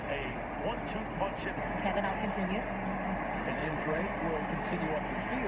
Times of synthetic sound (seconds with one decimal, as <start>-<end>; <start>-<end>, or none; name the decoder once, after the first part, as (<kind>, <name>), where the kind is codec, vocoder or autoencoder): 3.6-4.1 (vocoder, Vocos)